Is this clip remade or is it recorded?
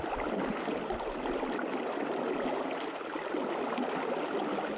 recorded